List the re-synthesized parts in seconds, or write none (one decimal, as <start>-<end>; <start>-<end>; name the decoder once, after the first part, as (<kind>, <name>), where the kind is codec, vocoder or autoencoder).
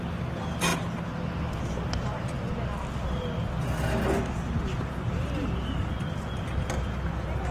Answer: none